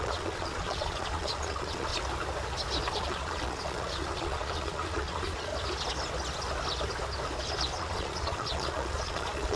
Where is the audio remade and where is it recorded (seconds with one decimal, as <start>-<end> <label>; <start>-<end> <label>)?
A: 0.0-1.9 remade; 1.9-3.0 recorded; 3.0-5.5 remade; 5.5-7.7 recorded; 7.7-9.6 remade